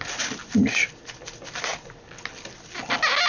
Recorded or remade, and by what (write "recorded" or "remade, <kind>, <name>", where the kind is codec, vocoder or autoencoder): recorded